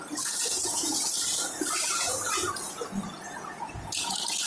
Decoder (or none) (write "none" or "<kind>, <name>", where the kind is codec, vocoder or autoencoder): vocoder, Vocos